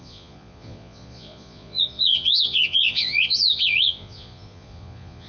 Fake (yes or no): yes